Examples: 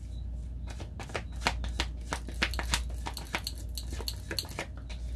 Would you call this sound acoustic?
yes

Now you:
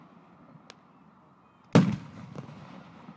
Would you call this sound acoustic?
yes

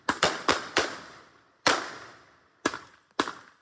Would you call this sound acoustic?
no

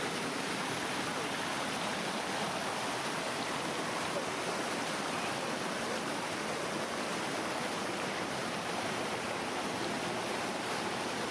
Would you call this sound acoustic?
yes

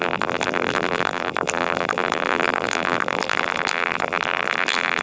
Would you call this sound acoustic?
no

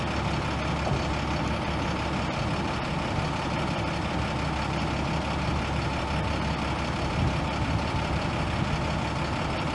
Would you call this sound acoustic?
yes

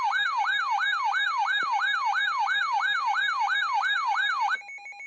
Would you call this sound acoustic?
yes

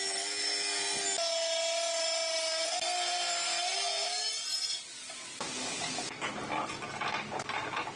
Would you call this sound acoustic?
yes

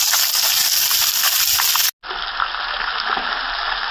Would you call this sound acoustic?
yes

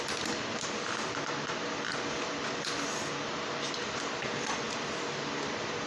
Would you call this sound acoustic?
no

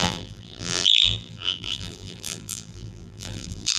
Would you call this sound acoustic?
no